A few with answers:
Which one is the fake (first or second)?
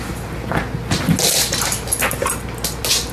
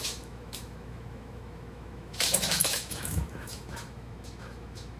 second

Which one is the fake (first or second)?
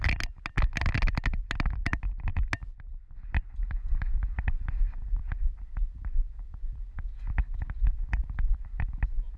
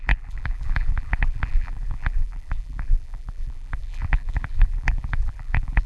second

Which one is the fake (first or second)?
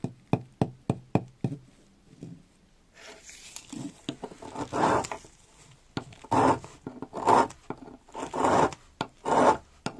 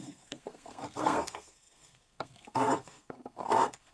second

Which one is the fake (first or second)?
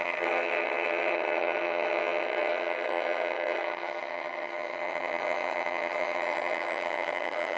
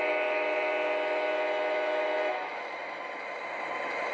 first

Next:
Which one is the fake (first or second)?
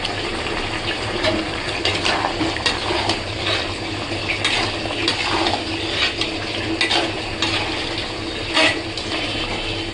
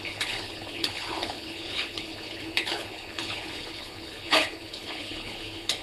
second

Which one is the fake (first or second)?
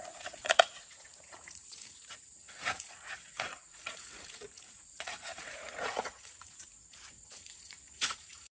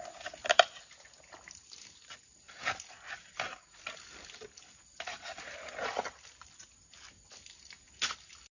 first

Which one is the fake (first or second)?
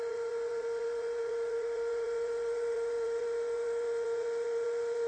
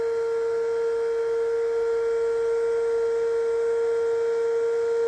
first